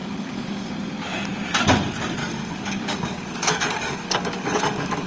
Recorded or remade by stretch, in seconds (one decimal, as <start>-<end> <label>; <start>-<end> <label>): 0.0-0.7 remade; 0.7-2.2 recorded; 2.2-5.1 remade